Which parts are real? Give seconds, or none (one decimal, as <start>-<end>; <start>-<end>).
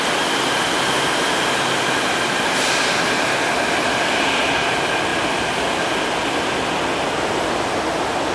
0.0-8.3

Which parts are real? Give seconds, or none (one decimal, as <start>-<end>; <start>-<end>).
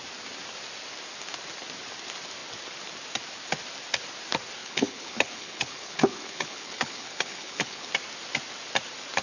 0.0-4.6; 7.9-9.2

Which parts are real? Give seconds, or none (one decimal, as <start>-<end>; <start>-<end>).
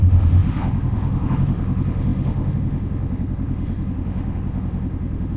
none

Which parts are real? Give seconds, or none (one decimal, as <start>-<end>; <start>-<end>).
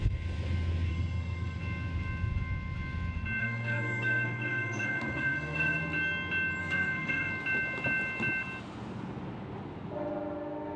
0.0-0.9; 1.6-3.4; 5.8-6.6; 7.3-10.8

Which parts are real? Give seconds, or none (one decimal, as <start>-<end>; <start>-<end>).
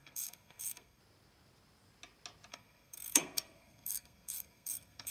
1.0-2.5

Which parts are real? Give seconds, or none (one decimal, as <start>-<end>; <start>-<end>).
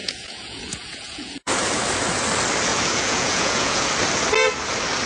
1.5-2.7; 3.9-5.1